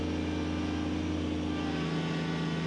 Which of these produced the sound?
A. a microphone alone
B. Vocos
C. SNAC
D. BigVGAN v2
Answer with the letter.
A